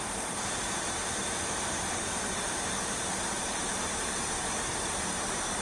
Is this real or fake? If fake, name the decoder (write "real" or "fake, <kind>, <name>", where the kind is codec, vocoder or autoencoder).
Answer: fake, vocoder, BigVGAN v2